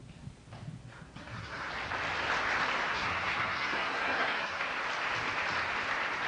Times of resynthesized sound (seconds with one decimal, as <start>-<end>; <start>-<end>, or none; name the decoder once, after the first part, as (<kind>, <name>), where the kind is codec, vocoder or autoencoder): 0.8-1.7 (codec, SNAC); 2.9-4.6